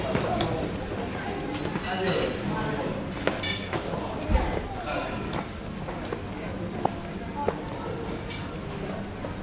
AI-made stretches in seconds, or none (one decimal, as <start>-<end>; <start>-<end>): none